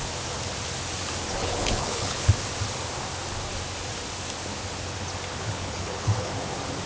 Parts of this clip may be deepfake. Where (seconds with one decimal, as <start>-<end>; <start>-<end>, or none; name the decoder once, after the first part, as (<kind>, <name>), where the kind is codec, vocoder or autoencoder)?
1.4-2.3 (codec, HILCodec); 5.4-6.3